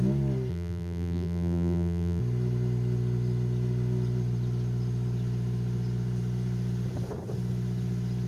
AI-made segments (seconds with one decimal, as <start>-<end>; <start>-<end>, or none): 0.5-2.2